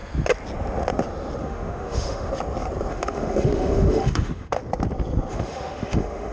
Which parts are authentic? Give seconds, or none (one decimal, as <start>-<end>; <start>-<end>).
0.0-1.4; 2.3-2.9; 4.6-5.3